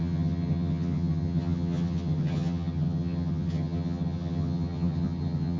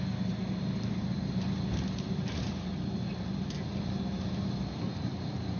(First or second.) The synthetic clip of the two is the first